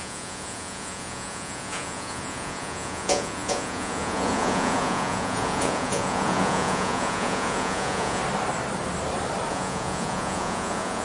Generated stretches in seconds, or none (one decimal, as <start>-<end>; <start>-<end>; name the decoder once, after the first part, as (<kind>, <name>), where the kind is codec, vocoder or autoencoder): 0.0-8.2 (vocoder, Vocos); 9.5-11.0